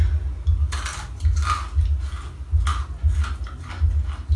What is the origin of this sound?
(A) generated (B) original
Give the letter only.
B